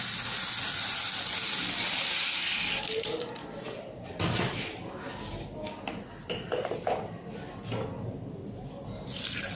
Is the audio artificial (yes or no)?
no